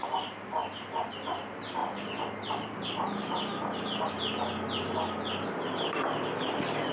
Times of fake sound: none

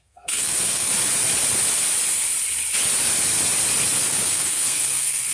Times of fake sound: 0.0-0.9 (codec, SNAC); 4.1-5.3

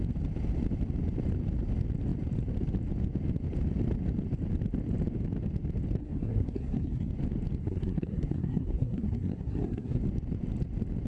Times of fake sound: 6.0-7.1 (codec, SNAC); 7.6-10.0